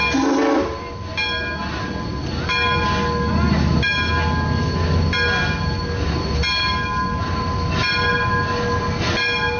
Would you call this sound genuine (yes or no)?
yes